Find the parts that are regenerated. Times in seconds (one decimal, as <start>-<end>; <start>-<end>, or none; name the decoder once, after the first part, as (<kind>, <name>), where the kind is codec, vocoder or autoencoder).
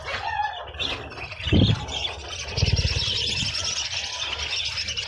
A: none